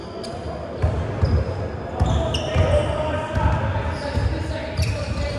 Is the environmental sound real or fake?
real